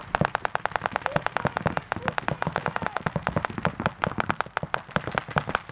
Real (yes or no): no